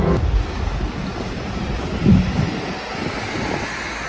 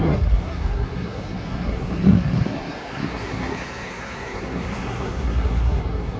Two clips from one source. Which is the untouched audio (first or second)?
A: first